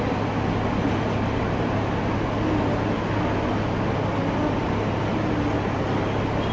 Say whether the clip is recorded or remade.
recorded